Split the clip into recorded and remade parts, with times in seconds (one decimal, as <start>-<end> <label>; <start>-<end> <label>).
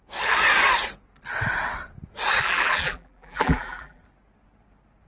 0.0-2.4 recorded; 2.4-4.0 remade; 4.0-5.1 recorded